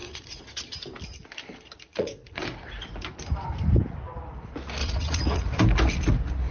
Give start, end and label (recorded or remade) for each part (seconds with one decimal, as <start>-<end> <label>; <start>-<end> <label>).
0.0-0.6 remade; 0.6-1.9 recorded; 1.9-2.4 remade; 2.4-4.8 recorded; 4.8-5.6 remade; 5.6-6.5 recorded